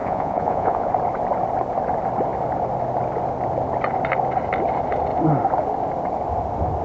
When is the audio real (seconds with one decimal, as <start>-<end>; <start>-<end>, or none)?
0.9-6.8